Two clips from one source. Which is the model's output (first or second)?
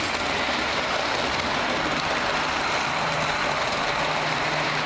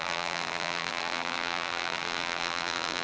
second